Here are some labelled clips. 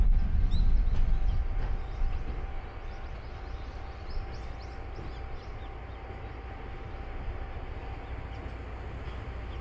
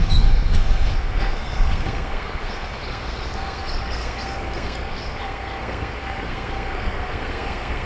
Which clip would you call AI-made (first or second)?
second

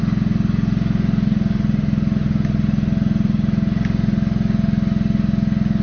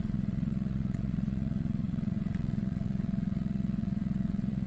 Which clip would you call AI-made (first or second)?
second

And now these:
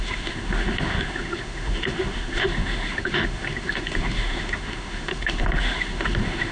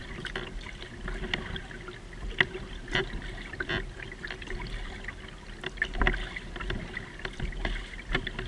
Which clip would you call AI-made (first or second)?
first